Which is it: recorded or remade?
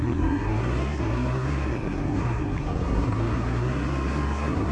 remade